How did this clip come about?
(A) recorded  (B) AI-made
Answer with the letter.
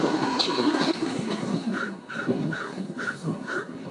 B